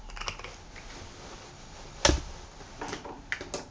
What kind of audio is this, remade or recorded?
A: recorded